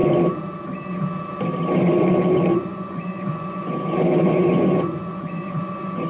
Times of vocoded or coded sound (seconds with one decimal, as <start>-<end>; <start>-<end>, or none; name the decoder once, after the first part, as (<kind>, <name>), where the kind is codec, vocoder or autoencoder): 2.5-6.1 (vocoder, Vocos)